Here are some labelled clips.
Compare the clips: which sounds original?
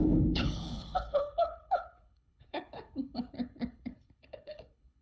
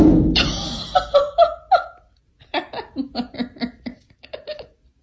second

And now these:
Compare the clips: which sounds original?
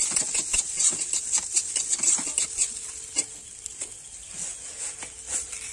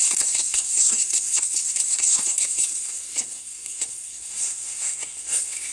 first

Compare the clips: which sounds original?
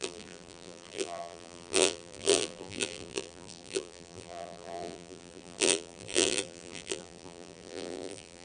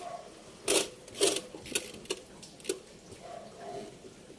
second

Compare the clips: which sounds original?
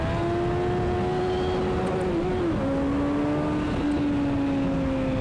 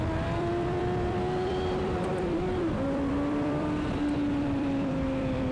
first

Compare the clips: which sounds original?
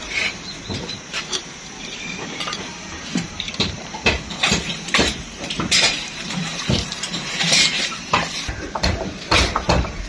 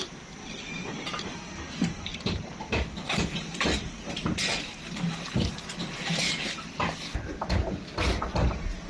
second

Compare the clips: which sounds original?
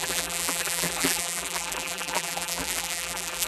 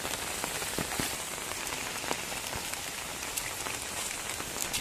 second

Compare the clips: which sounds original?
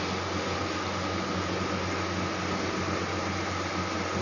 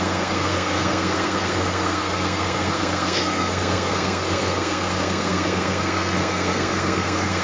first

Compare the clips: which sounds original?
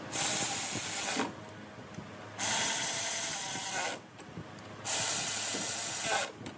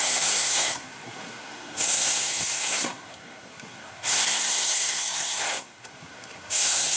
first